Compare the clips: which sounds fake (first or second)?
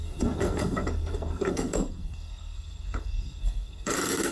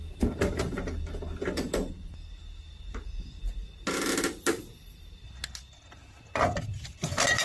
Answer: first